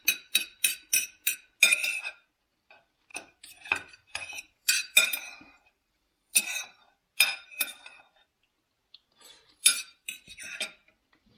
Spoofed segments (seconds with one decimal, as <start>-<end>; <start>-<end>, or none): 3.1-6.8; 9.3-10.4

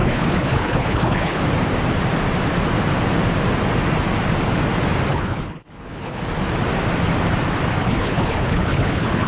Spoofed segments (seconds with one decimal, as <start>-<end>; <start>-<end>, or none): 0.0-1.4; 5.1-6.2; 7.8-9.3

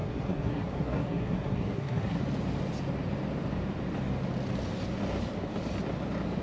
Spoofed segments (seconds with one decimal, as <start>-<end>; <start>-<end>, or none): 0.0-2.2

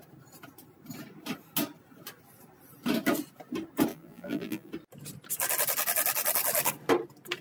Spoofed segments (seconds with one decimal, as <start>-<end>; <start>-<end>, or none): 3.9-4.7

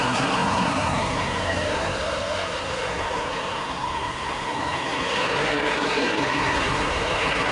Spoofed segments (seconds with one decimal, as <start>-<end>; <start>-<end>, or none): 0.0-7.5